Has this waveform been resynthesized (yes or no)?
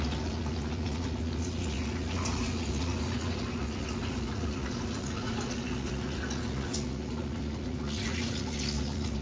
yes